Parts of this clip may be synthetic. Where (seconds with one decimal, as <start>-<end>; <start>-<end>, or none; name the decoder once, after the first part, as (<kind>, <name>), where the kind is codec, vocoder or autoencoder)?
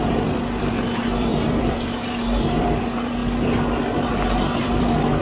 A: 0.0-3.2 (vocoder, BigVGAN v2); 4.1-5.2